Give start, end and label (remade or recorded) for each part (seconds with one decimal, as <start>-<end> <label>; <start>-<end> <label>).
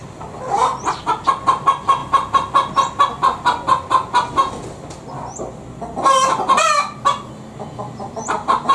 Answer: 0.0-1.0 remade; 1.0-8.7 recorded